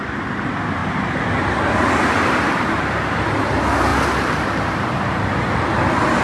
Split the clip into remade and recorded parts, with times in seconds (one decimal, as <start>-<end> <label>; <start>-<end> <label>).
0.0-0.8 recorded; 0.8-3.2 remade; 3.2-6.2 recorded

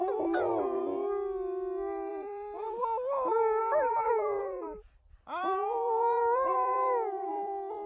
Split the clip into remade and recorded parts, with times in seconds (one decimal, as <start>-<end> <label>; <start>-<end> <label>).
0.0-0.5 remade; 0.5-2.1 recorded; 2.1-2.8 remade; 2.8-3.6 recorded; 3.6-7.9 remade

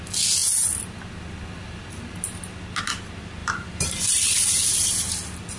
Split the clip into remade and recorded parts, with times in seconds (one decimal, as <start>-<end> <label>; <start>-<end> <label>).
0.0-3.4 recorded; 3.4-5.1 remade; 5.1-5.6 recorded

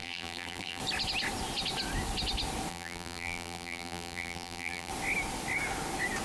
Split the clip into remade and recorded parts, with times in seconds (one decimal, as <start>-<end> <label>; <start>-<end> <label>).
0.0-0.8 remade; 0.8-2.7 recorded; 2.7-4.9 remade; 4.9-6.2 recorded

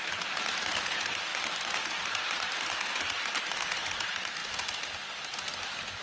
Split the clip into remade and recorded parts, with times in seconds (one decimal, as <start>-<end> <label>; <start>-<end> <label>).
0.0-1.3 recorded; 1.3-3.5 remade; 3.5-6.0 recorded

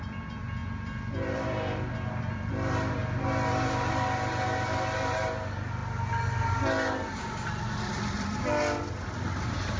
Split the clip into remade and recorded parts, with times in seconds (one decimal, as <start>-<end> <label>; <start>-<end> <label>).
0.0-9.8 recorded

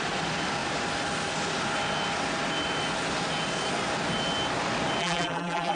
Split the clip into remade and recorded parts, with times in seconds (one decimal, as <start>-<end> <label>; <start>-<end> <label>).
0.0-5.0 recorded; 5.0-5.8 remade